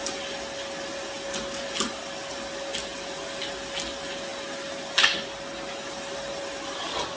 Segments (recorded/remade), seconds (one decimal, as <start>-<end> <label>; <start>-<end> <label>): 0.0-7.2 recorded

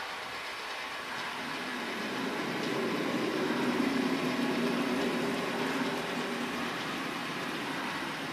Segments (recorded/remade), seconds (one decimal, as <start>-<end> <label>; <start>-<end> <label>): 0.0-8.3 recorded

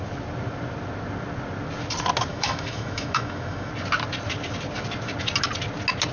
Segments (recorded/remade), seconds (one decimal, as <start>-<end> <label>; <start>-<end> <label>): 0.0-2.3 recorded; 2.3-3.7 remade; 3.7-6.1 recorded

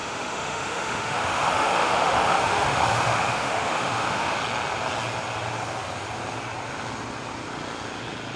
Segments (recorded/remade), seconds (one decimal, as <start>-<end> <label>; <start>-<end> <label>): 0.0-4.4 remade; 4.4-8.4 recorded